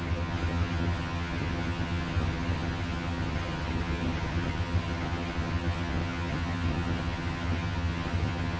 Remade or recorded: remade